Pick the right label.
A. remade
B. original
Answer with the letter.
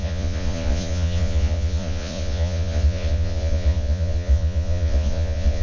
A